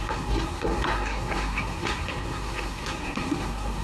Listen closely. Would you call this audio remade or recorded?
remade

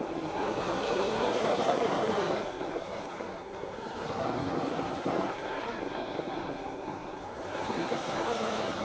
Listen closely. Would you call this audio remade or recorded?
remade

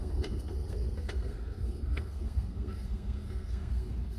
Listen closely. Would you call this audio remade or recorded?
remade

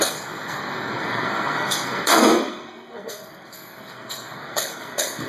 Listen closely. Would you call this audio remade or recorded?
remade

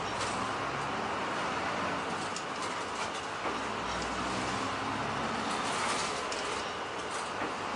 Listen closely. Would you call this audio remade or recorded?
recorded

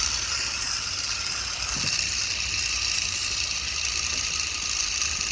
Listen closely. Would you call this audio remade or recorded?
recorded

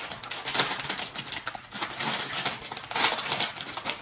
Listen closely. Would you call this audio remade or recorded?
recorded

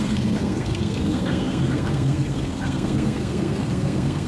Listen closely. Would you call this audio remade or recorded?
remade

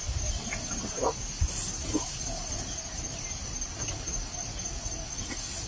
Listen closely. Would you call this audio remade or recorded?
recorded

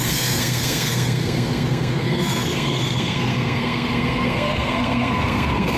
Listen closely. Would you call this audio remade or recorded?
remade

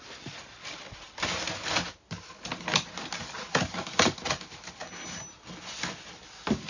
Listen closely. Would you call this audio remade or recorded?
recorded